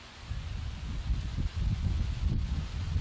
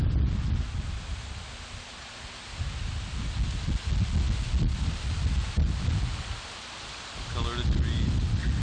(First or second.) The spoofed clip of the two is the first